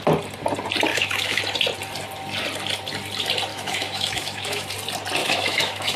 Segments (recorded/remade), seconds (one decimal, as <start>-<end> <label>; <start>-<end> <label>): 0.0-0.9 recorded; 0.9-1.4 remade; 1.4-3.5 recorded; 3.5-4.7 remade; 4.7-5.2 recorded; 5.2-6.0 remade